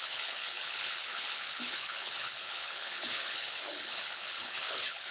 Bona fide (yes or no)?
no